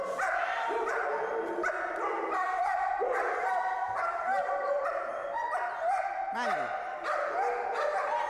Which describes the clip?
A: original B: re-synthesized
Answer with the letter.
A